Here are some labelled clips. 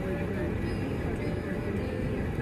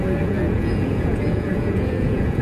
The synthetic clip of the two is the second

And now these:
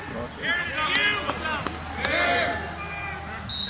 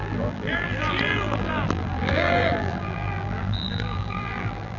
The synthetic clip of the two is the second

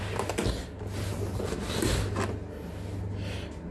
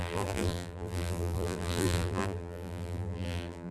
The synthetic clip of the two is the second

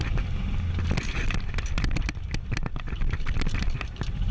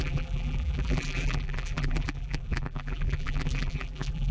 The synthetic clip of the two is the second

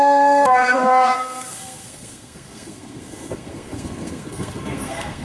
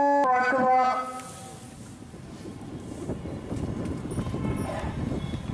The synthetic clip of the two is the first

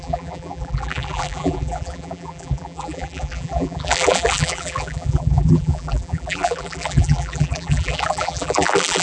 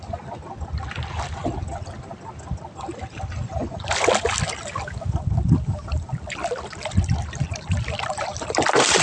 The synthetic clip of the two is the first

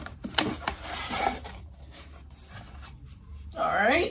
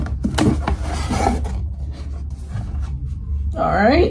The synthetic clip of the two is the first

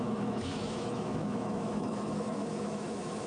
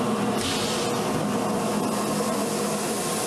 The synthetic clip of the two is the first